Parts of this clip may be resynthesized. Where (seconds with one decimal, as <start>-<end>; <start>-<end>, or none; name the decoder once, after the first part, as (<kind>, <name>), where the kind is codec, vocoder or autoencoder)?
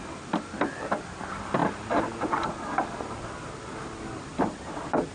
none